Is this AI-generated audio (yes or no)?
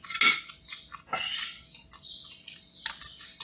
no